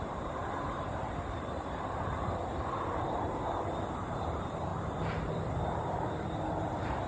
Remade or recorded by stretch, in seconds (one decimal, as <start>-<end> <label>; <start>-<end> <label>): 0.0-4.7 remade; 4.7-6.6 recorded; 6.6-7.1 remade